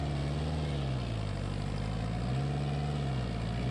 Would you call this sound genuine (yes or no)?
yes